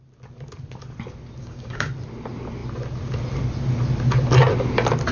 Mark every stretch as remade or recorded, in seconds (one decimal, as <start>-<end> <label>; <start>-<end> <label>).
0.0-1.4 recorded; 1.4-1.9 remade; 1.9-5.1 recorded